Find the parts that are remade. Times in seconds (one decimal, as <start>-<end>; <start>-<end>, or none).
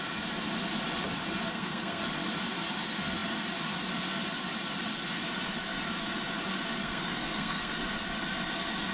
1.5-2.0; 6.8-7.7